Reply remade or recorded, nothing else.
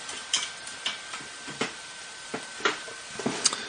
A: recorded